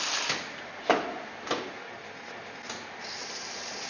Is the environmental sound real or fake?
real